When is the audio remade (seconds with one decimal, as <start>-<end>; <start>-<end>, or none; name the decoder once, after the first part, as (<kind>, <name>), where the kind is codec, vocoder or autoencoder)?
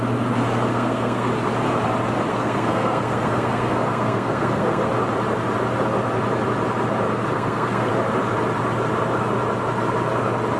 0.7-1.3 (codec, SNAC); 2.3-4.8; 7.3-7.9